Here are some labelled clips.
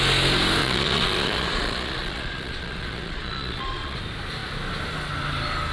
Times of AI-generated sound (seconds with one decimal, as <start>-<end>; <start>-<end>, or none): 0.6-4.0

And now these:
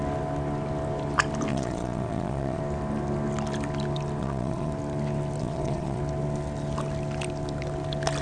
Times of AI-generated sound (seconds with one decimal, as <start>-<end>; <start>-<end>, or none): 1.5-2.6; 4.2-4.7; 5.4-6.0

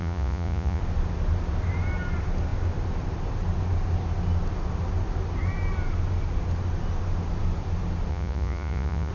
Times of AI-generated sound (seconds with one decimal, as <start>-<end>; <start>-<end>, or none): 0.0-0.8; 8.1-9.1

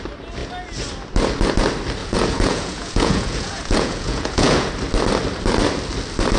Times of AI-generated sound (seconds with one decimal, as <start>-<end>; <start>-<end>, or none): 2.0-4.7